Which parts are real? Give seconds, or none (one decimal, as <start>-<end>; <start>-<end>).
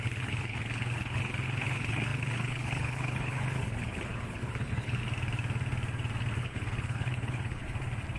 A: 5.0-6.4; 7.6-8.2